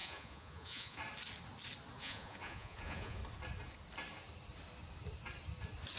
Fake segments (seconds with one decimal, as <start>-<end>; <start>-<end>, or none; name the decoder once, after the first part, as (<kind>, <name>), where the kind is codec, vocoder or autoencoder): 0.0-1.0 (vocoder, Vocos); 2.0-3.2